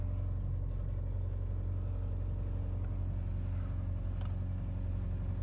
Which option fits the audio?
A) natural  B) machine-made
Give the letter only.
A